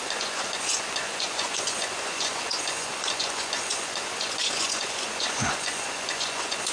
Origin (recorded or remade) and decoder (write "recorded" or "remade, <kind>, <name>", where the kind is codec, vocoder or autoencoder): remade, vocoder, Vocos